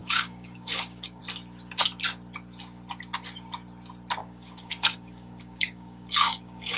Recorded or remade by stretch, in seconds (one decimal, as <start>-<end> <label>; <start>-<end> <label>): 0.0-1.2 remade; 1.2-4.2 recorded; 4.2-6.8 remade